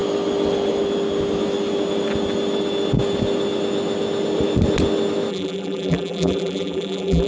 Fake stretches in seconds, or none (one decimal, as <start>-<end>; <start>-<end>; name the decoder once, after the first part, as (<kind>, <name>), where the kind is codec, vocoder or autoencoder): 5.3-7.3 (vocoder, BigVGAN v2)